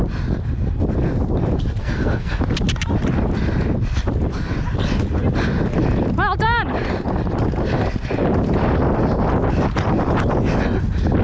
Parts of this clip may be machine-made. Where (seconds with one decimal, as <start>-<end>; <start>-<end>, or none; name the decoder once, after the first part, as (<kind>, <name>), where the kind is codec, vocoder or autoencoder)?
1.8-2.4 (codec, SNAC)

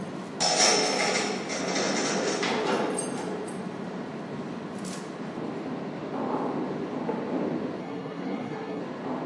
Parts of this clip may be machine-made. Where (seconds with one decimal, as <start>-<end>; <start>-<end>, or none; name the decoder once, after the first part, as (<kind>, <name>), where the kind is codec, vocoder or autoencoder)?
7.8-8.8 (codec, SNAC)

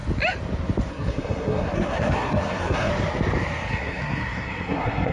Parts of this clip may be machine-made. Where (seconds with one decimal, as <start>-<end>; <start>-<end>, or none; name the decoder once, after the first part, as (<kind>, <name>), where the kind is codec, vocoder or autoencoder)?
0.9-2.9 (codec, SNAC); 3.7-5.1

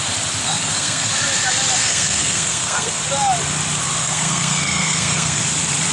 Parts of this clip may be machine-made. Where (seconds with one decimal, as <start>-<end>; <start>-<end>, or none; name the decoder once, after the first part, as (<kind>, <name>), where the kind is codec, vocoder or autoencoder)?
0.4-1.1 (codec, SNAC); 1.8-3.0; 4.0-5.4

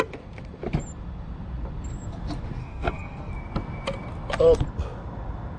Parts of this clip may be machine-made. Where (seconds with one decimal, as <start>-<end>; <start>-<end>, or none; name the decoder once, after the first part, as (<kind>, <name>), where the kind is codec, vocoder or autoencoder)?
2.6-3.3 (codec, SNAC)

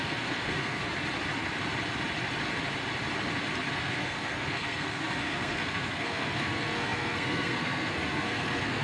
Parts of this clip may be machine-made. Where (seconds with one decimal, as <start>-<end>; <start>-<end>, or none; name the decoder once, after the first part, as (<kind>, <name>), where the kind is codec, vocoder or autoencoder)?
0.0-0.8 (codec, SNAC); 3.7-8.8

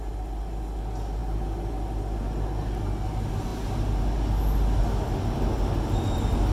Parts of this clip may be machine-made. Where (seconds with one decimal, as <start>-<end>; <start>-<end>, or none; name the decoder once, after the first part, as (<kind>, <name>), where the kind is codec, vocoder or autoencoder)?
none

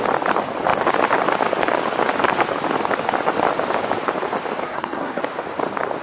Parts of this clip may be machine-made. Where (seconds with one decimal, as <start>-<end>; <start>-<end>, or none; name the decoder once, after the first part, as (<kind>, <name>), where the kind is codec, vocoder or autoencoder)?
4.6-5.2 (codec, SNAC)